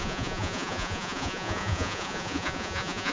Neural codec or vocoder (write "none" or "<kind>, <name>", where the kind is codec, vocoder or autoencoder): vocoder, Vocos